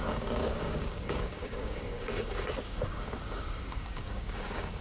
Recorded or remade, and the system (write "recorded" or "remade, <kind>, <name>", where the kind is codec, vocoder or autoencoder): remade, codec, DAC